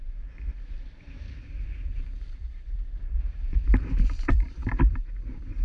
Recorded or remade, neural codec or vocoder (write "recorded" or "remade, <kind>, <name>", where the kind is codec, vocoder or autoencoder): remade, vocoder, BigVGAN v2